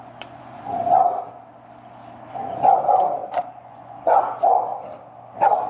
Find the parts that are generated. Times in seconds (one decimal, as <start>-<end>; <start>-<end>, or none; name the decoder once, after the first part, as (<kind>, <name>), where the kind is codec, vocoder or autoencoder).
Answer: 0.0-0.8 (vocoder, Vocos); 2.3-4.7